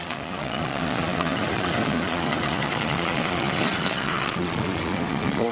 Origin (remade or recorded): remade